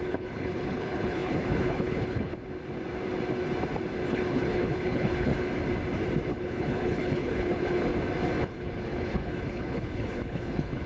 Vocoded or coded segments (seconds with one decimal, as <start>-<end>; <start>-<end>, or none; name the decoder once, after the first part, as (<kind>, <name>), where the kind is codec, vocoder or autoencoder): 0.0-2.3 (codec, HILCodec); 4.1-5.3; 6.3-7.9; 8.4-10.9